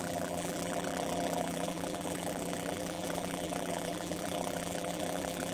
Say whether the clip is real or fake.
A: fake